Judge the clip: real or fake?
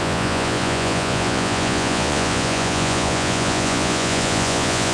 fake